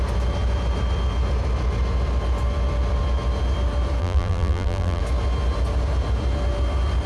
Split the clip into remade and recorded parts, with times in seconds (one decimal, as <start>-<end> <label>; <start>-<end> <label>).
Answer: 0.0-4.0 recorded; 4.0-5.0 remade; 5.0-7.1 recorded